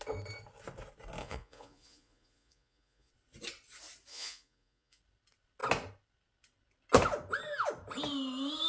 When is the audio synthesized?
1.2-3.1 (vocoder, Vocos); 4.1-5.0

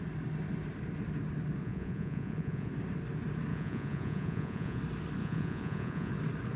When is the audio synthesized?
1.6-2.7 (vocoder, Vocos); 3.5-4.8; 5.2-6.1

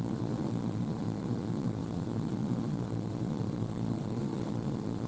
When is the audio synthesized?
0.0-5.1 (vocoder, Vocos)

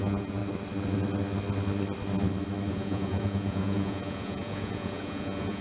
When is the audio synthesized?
0.0-0.4 (vocoder, Vocos); 2.7-5.6

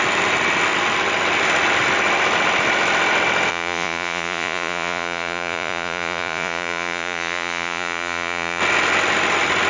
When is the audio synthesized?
3.5-8.6 (vocoder, Vocos)